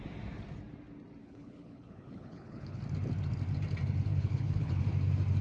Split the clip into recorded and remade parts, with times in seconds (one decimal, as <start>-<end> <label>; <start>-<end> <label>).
0.0-1.2 recorded; 1.2-2.8 remade; 2.8-4.1 recorded; 4.1-4.8 remade; 4.8-5.4 recorded